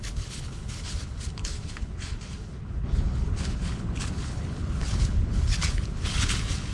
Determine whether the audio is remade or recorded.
remade